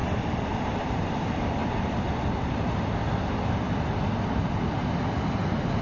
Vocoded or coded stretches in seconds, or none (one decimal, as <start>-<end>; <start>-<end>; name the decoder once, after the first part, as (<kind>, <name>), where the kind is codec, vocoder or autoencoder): none